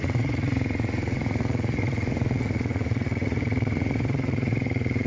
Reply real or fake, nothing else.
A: fake